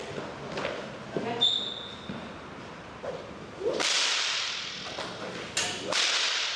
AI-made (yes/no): no